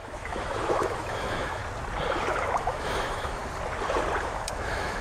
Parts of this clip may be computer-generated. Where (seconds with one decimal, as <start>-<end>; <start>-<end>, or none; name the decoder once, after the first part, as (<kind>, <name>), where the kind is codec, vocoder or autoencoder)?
0.0-1.6 (autoencoder, DAC-VAE); 2.3-3.4; 4.2-5.0